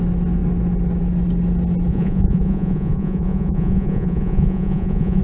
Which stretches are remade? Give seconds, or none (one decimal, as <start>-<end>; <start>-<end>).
1.9-5.2